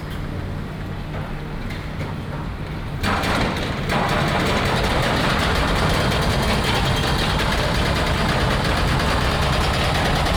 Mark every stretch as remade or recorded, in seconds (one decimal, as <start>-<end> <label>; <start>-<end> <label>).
0.0-2.5 recorded; 2.5-6.3 remade; 6.3-10.4 recorded